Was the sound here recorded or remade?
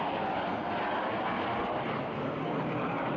recorded